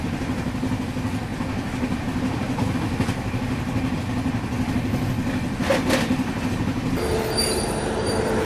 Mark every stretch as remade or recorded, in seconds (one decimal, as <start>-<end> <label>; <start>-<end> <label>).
0.0-8.5 recorded